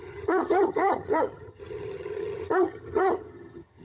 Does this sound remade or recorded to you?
remade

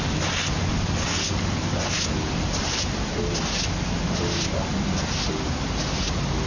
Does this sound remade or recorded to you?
recorded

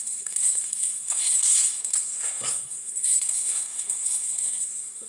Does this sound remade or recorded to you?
remade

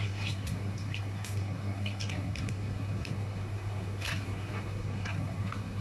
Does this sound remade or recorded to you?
remade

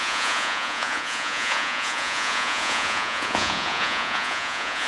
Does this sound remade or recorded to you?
remade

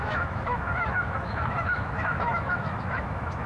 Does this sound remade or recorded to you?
remade